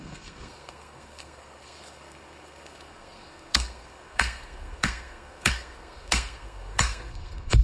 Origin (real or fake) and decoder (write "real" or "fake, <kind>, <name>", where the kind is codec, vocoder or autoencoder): fake, codec, SNAC